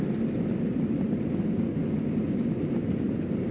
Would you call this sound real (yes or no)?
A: yes